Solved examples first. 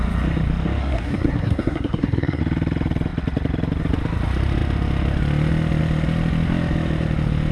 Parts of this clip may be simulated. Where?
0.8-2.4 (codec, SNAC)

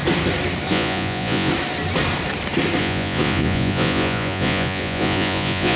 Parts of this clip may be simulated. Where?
0.7-1.5 (vocoder, Vocos); 2.8-5.8

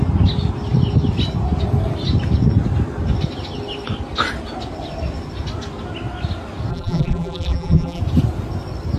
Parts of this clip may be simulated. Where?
6.7-8.0 (vocoder, BigVGAN v2)

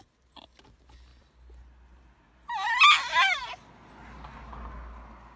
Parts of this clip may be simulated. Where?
none